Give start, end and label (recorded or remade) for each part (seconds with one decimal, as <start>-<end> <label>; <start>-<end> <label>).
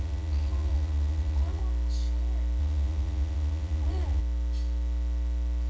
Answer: 0.0-1.6 remade; 1.6-2.6 recorded; 2.6-4.2 remade; 4.2-5.7 recorded